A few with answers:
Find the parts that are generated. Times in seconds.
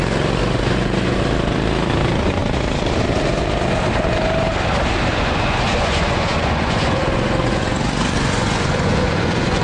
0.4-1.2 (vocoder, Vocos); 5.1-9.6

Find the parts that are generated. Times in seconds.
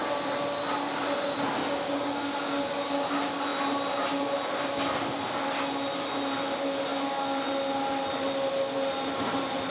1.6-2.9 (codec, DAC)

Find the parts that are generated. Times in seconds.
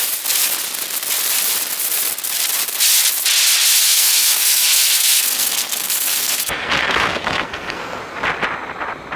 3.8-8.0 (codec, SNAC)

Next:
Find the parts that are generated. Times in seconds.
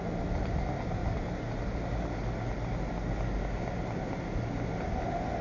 none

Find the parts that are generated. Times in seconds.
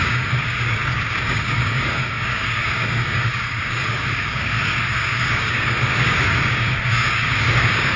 0.0-8.0 (codec, DAC)